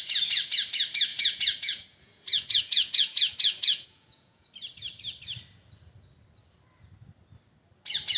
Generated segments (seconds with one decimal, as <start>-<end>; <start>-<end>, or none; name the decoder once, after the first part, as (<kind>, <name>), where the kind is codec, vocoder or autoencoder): 1.1-4.5 (vocoder, Vocos)